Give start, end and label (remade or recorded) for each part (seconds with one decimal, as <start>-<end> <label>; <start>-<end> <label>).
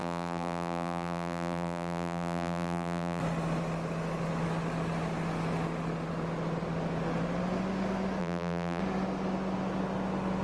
0.0-3.2 remade; 3.2-8.2 recorded; 8.2-8.8 remade; 8.8-10.4 recorded